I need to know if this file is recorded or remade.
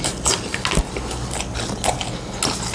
recorded